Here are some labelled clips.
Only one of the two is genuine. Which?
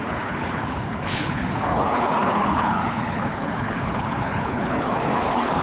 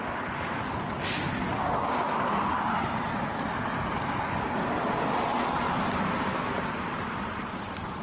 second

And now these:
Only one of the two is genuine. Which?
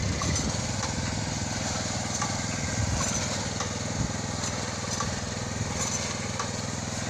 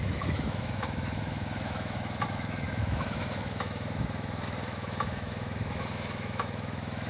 first